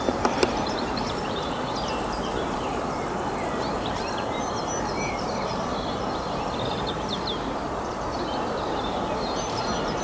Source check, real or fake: fake